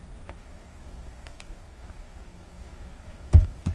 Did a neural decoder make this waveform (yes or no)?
yes